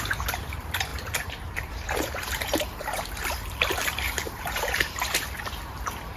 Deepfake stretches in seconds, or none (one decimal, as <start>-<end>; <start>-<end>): 0.0-6.2